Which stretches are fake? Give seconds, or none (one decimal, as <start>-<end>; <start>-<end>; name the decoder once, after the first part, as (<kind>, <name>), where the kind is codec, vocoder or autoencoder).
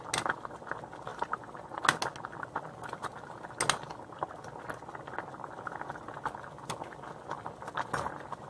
1.1-1.8 (vocoder, BigVGAN v2)